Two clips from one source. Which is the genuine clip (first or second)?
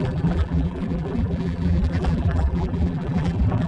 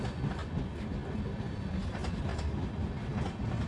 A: second